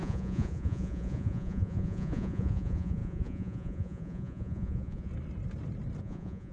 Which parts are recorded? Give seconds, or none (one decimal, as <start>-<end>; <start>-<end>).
5.1-6.0